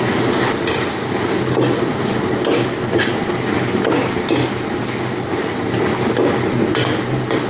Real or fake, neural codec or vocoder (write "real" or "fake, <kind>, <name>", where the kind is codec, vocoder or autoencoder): real